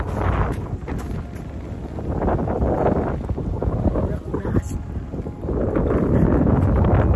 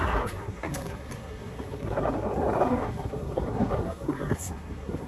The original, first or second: first